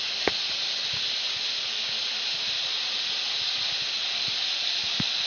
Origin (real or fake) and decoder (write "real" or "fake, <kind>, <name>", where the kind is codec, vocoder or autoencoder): real